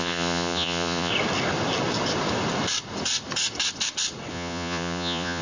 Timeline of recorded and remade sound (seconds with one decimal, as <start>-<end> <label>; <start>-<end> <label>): 0.0-1.1 remade; 1.1-4.3 recorded; 4.3-5.4 remade

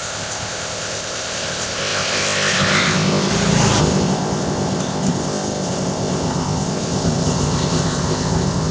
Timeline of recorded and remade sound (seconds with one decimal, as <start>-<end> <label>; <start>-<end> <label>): 0.0-3.3 remade; 3.3-3.8 recorded; 3.8-8.7 remade

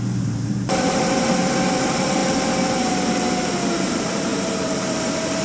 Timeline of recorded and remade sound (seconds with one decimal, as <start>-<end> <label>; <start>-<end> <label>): 0.0-2.2 remade; 2.2-3.9 recorded; 3.9-4.3 remade; 4.3-5.4 recorded

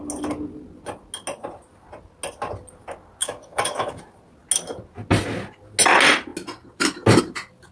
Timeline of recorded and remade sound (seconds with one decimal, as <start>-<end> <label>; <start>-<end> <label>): 0.0-3.2 recorded; 3.2-4.0 remade; 4.0-7.7 recorded

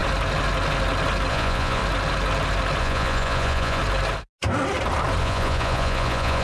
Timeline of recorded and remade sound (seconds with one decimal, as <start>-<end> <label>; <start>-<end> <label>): 0.0-1.3 recorded; 1.3-1.8 remade; 1.8-2.8 recorded; 2.8-3.8 remade; 3.8-5.2 recorded; 5.2-6.4 remade

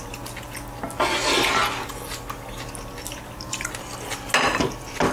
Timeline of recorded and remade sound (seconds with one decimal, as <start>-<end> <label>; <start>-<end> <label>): 0.0-5.1 recorded

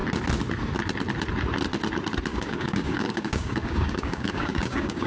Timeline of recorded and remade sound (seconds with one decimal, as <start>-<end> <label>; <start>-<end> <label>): 0.0-2.3 recorded; 2.3-5.1 remade

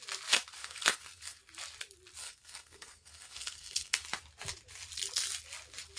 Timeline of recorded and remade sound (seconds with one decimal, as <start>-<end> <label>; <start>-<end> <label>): 0.0-0.6 recorded; 0.6-1.4 remade; 1.4-2.2 recorded; 2.2-4.0 remade; 4.0-6.0 recorded